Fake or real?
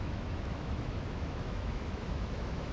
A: fake